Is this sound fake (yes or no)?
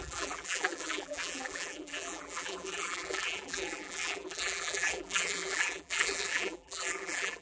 yes